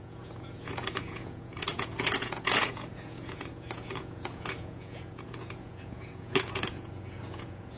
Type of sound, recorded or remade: remade